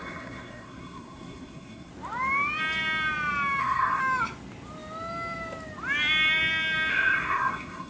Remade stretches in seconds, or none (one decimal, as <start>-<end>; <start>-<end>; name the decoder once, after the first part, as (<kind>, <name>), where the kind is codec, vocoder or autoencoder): 0.0-1.9 (codec, SNAC); 3.6-4.0; 6.9-7.9